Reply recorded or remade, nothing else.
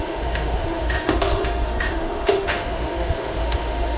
remade